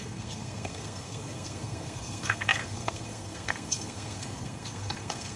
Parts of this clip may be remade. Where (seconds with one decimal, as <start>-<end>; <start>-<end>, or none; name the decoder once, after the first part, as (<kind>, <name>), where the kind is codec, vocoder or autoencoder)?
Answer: 0.0-5.4 (codec, SNAC)